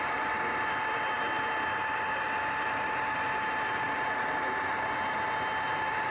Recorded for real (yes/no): yes